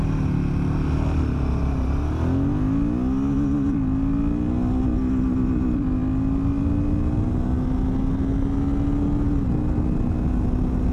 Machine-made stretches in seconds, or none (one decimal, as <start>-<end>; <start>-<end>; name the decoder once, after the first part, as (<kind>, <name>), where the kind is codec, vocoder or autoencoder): none